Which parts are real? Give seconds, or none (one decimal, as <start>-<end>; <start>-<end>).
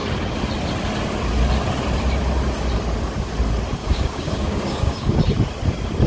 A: 0.0-3.8; 5.2-6.1